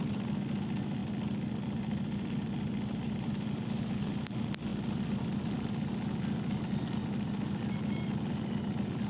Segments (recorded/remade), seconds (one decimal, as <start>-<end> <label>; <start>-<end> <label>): 0.0-9.1 recorded